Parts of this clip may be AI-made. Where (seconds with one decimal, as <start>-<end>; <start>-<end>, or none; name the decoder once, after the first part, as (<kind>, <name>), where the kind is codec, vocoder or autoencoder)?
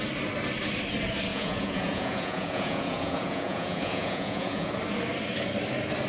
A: 1.3-4.7 (vocoder, Vocos)